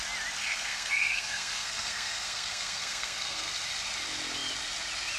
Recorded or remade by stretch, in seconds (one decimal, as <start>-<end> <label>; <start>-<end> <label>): 0.0-0.4 recorded; 0.4-3.5 remade; 3.5-5.2 recorded